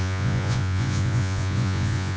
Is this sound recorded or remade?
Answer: remade